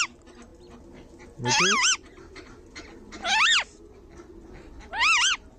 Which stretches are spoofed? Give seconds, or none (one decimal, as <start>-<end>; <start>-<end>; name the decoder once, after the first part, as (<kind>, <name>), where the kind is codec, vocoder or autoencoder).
none